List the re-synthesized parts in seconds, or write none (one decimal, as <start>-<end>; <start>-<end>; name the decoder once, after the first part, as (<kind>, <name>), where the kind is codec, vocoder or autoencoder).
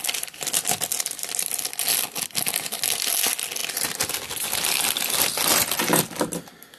none